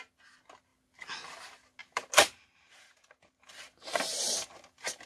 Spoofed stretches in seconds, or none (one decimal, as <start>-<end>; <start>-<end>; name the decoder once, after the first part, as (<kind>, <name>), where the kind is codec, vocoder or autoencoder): 1.8-5.1 (vocoder, BigVGAN v2)